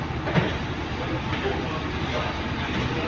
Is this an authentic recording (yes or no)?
yes